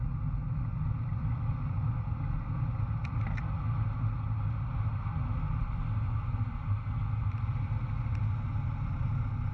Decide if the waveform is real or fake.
real